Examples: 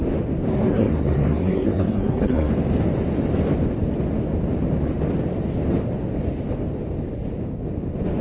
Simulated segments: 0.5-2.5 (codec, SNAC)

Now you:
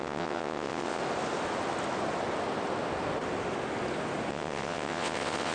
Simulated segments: 0.0-1.0 (vocoder, WaveNeXt); 4.3-5.5

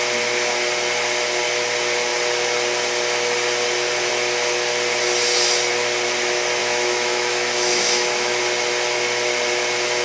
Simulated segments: 6.6-8.4 (autoencoder, DAC-VAE)

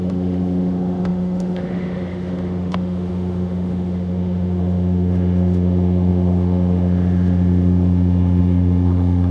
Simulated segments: 0.0-9.3 (autoencoder, DAC-VAE)